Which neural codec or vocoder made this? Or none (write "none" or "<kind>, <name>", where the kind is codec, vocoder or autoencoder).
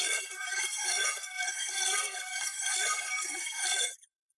codec, SNAC